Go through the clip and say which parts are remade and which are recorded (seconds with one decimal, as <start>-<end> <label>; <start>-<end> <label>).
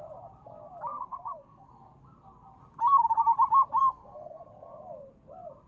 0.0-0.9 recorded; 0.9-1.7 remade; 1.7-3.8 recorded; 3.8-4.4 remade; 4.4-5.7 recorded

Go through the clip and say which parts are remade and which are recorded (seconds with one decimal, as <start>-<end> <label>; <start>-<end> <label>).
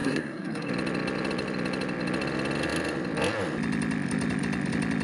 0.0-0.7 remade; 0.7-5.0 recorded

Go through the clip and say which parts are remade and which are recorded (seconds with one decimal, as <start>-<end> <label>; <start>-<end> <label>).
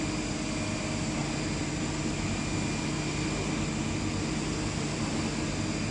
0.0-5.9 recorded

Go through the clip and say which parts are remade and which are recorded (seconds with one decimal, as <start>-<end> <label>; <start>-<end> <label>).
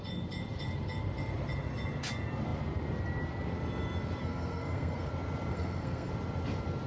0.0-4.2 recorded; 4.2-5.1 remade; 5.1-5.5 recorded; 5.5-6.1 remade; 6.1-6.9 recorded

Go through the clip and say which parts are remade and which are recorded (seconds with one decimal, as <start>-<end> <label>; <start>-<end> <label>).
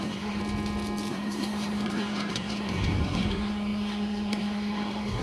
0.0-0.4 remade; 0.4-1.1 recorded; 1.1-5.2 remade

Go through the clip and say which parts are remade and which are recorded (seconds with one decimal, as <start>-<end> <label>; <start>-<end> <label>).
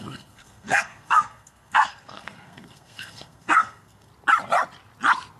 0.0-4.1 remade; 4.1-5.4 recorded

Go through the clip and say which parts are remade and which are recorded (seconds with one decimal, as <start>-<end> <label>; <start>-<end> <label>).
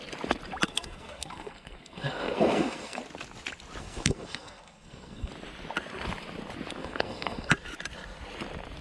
0.0-0.7 recorded; 0.7-3.0 remade; 3.0-3.8 recorded; 3.8-5.3 remade; 5.3-6.8 recorded; 6.8-7.5 remade; 7.5-8.8 recorded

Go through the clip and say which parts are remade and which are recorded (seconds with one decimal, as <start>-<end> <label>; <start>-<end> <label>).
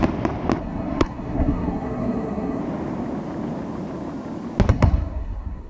0.0-0.6 recorded; 0.6-2.6 remade; 2.6-4.7 recorded; 4.7-5.7 remade